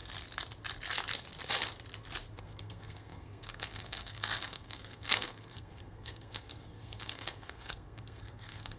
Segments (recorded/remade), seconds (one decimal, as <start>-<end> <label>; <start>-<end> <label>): 0.0-2.4 recorded; 2.4-8.8 remade